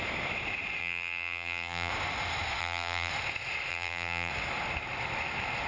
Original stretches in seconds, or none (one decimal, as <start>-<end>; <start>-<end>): 0.0-0.8; 1.9-2.6; 3.1-3.7; 4.3-5.7